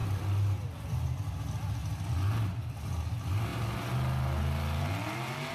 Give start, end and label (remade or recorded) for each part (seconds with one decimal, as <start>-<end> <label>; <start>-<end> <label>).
0.0-5.5 recorded